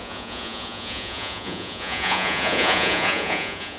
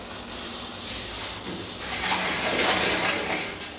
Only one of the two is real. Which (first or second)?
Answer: second